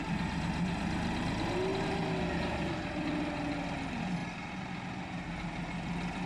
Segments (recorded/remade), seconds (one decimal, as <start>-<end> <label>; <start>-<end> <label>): 0.0-6.3 recorded